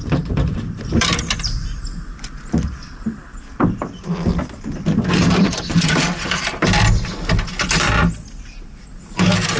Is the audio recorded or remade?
remade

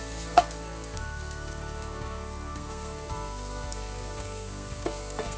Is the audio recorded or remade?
remade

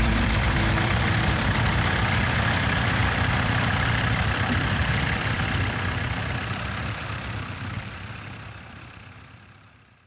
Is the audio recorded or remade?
remade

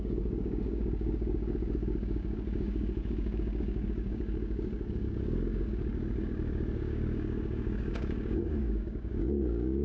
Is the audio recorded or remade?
remade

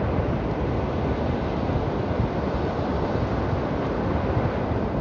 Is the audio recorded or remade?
recorded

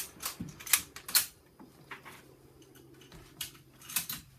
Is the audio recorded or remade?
recorded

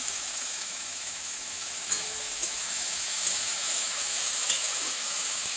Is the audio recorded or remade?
remade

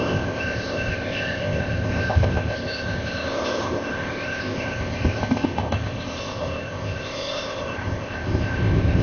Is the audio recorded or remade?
remade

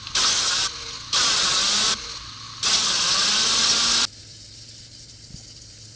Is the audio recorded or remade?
recorded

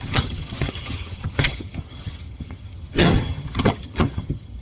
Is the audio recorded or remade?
remade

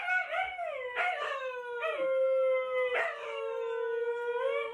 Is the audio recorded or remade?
recorded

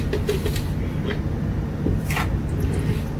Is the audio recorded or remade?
recorded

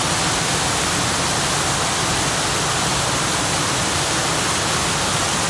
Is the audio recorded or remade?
recorded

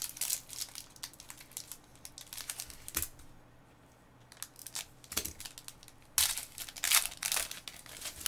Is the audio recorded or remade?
recorded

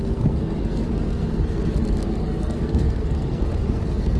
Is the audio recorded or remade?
remade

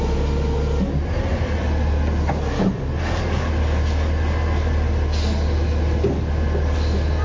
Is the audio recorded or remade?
recorded